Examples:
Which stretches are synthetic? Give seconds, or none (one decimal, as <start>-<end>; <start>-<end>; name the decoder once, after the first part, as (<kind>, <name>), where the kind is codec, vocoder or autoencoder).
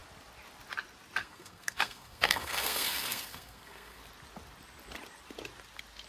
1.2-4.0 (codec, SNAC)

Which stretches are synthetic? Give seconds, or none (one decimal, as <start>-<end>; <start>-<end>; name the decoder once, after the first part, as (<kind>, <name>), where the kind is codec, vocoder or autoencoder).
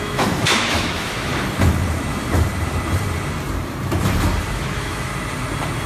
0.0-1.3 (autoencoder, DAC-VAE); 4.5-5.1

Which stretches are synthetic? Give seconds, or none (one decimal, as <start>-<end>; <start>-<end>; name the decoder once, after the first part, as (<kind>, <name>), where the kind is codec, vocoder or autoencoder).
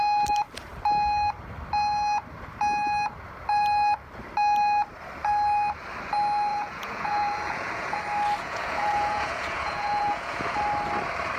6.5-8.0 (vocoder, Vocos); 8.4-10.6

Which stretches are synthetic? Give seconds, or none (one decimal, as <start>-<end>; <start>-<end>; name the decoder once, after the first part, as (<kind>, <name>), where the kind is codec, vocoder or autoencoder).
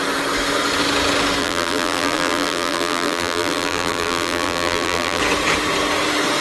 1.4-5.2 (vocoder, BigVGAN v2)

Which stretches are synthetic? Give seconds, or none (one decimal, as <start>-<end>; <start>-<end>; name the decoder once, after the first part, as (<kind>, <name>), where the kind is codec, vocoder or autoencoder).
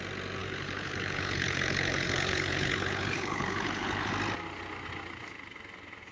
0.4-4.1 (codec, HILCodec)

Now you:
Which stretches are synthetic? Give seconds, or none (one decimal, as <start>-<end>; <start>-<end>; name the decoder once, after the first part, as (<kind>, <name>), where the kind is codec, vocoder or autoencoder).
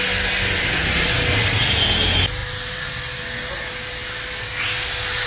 2.4-3.2 (vocoder, BigVGAN v2)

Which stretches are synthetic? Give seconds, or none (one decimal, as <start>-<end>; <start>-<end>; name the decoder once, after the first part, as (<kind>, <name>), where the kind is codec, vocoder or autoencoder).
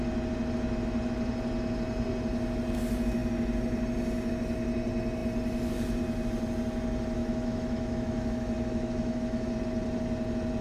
7.2-9.5 (autoencoder, DAC-VAE)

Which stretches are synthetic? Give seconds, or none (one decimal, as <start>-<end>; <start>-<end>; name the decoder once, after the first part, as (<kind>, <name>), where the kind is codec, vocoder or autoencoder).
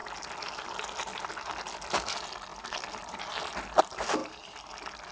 none